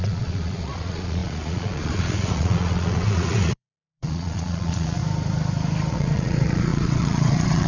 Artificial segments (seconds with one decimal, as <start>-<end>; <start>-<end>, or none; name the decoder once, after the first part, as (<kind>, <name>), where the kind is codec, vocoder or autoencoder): 0.0-5.0 (vocoder, Vocos); 5.9-7.7